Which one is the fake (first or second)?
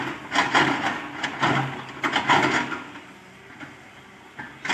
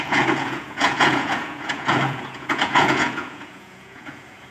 second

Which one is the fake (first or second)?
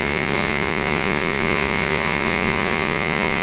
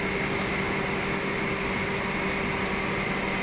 first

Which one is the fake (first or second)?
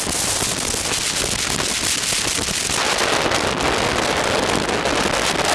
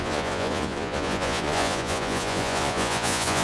second